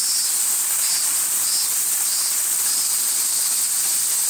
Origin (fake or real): real